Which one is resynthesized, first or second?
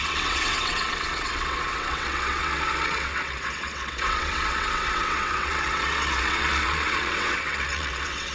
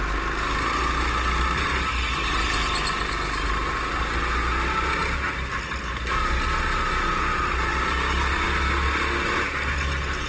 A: first